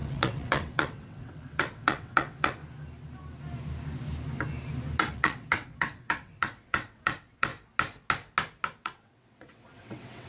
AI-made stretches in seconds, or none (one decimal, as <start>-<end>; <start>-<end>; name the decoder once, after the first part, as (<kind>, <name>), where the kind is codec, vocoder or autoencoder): 0.0-2.6 (vocoder, WaveNeXt); 5.1-7.5; 8.8-10.3